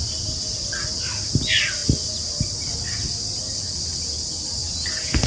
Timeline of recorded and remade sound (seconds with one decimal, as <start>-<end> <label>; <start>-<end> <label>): 0.0-5.3 recorded